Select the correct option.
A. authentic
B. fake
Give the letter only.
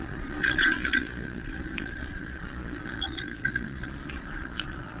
B